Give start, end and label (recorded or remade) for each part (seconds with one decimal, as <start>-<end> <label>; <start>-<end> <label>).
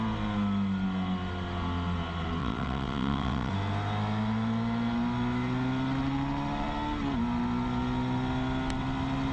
0.0-2.4 recorded; 2.4-3.5 remade; 3.5-9.3 recorded